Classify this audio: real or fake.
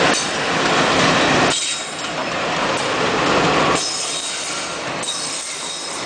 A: real